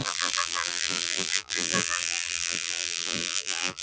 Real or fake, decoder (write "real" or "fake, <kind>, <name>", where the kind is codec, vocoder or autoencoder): fake, vocoder, BigVGAN v2